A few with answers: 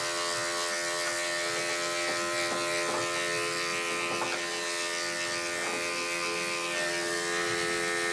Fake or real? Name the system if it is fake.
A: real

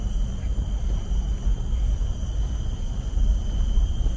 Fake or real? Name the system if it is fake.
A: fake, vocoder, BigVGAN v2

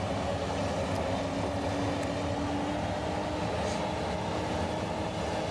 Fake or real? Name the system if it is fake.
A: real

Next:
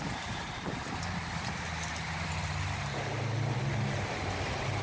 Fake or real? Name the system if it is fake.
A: real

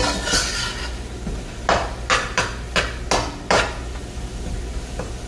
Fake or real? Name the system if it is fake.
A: real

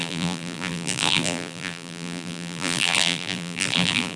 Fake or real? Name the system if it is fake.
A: fake, vocoder, BigVGAN v2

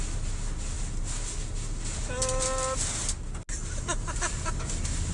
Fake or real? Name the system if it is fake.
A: real